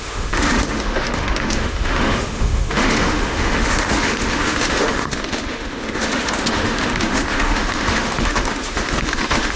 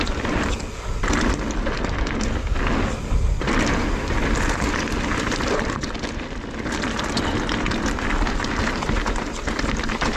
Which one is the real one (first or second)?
second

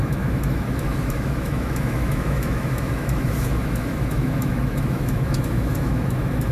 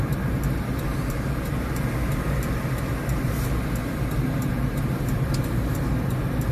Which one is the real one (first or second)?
second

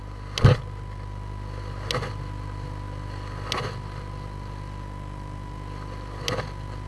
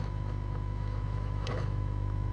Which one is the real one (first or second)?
first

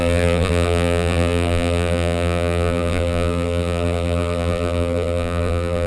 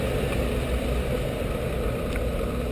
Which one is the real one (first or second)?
second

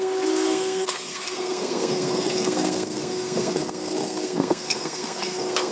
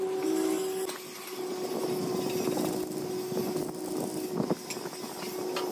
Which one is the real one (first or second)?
second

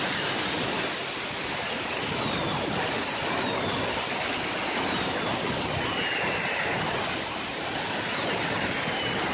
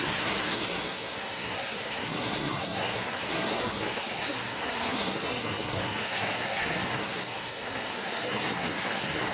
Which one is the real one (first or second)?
first